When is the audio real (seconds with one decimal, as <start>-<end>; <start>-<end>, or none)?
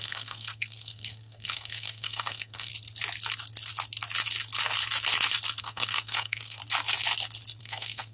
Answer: 2.7-5.6; 6.6-7.6